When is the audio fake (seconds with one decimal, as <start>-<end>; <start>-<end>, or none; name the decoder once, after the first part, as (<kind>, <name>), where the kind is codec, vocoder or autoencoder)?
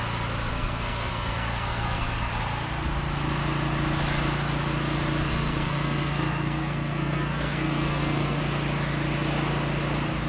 0.5-2.3 (codec, SNAC); 5.3-8.4